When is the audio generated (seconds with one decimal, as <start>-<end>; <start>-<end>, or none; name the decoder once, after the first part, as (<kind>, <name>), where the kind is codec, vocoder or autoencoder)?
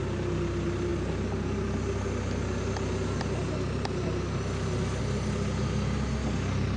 none